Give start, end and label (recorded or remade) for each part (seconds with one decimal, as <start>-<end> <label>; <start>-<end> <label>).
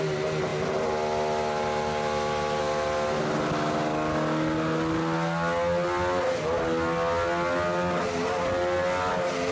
0.0-9.5 recorded